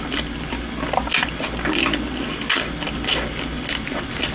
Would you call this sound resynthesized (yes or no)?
no